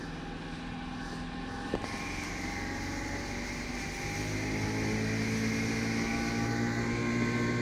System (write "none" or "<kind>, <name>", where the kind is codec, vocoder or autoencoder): none